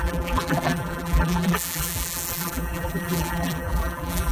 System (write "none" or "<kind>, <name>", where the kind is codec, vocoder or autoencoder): vocoder, BigVGAN v2